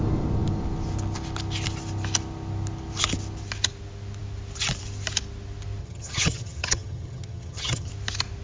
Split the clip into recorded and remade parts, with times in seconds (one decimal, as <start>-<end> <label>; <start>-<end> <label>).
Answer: 0.0-5.8 recorded; 5.8-7.9 remade; 7.9-8.4 recorded